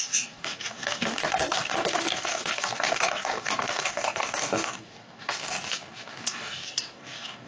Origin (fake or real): fake